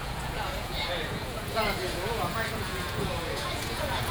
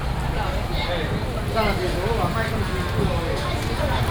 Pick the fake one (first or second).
first